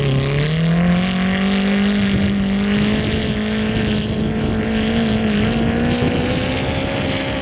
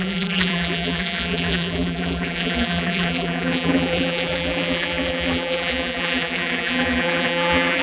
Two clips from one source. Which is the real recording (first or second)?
first